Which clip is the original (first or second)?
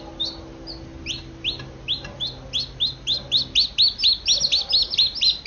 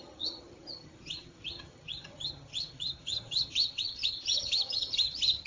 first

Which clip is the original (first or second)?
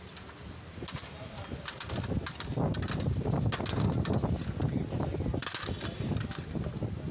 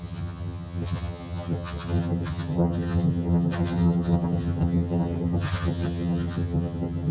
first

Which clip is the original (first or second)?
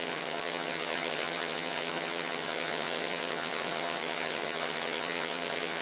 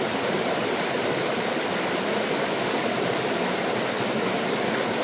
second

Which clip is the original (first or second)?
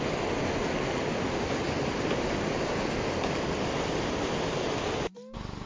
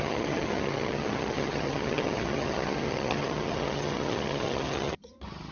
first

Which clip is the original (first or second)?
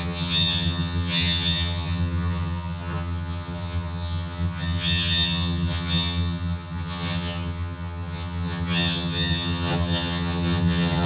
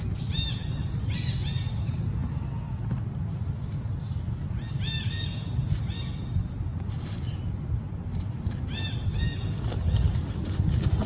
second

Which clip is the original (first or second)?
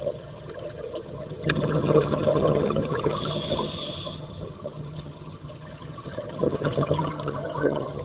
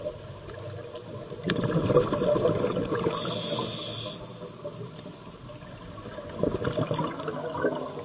second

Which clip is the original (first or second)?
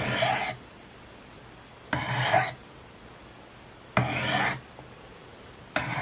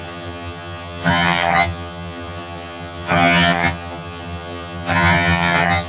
first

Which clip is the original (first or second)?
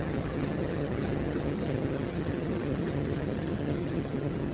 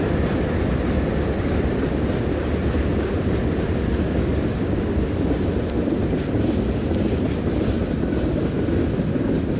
second